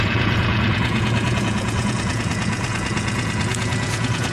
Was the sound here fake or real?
fake